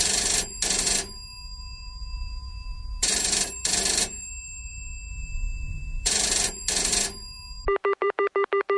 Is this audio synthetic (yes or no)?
yes